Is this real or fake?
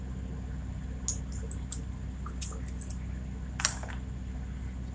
real